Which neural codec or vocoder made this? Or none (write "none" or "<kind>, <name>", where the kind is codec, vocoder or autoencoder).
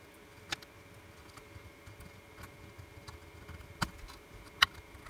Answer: none